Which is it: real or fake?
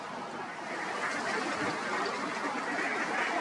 real